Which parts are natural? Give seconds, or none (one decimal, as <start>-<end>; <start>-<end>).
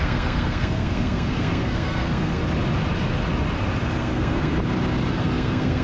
2.4-4.0; 4.5-5.1